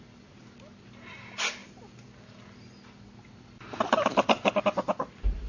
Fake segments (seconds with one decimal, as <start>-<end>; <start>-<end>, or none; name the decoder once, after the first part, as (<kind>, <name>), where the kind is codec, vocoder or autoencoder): none